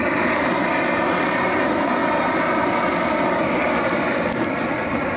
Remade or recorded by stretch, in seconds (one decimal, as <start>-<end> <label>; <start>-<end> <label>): 0.0-0.7 remade; 0.7-1.3 recorded; 1.3-2.0 remade; 2.0-3.4 recorded; 3.4-5.2 remade